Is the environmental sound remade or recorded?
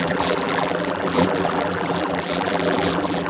remade